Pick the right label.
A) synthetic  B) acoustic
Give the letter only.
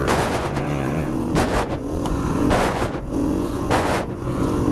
A